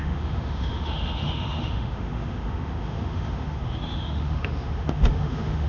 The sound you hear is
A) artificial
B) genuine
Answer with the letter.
A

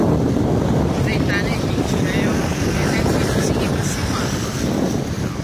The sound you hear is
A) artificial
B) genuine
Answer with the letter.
B